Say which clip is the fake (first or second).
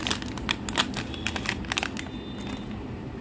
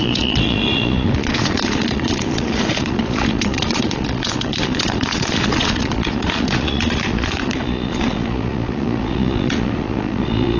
second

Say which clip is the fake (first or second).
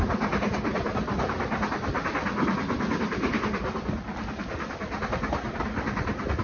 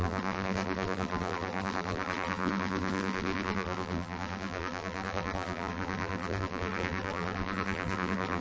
second